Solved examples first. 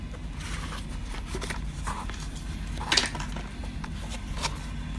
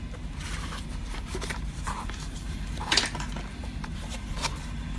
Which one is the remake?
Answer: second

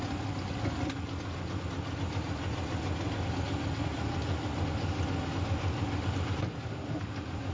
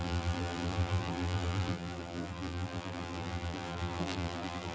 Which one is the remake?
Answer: second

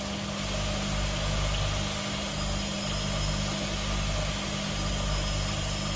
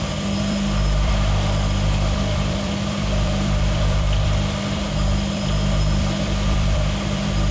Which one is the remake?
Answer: second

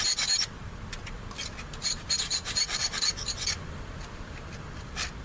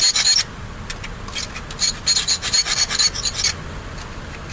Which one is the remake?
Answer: first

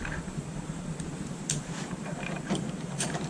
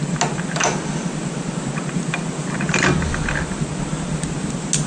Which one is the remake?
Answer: first